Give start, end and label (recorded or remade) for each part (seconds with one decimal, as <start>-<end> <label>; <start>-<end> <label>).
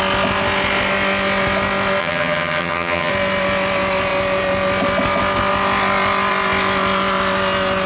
0.0-2.0 recorded; 2.0-3.1 remade; 3.1-7.9 recorded